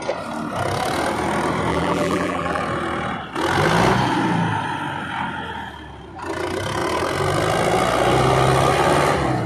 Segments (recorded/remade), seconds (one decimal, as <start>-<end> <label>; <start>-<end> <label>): 0.0-1.7 recorded; 1.7-2.6 remade; 2.6-9.5 recorded